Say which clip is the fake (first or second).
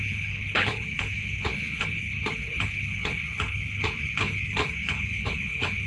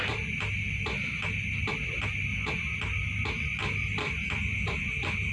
first